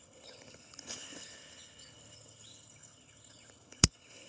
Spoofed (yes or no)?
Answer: yes